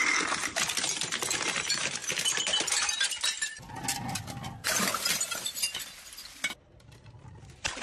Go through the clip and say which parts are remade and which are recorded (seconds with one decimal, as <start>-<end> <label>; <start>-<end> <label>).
0.0-7.8 recorded